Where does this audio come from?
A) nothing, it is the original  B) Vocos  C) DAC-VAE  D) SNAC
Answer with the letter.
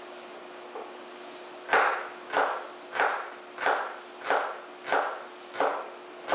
A